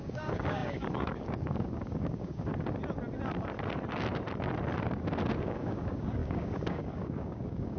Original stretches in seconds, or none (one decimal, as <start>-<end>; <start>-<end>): 2.5-5.4